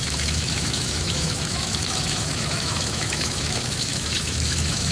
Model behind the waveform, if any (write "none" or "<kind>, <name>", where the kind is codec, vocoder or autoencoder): autoencoder, DAC-VAE